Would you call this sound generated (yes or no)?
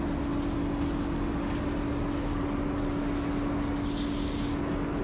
no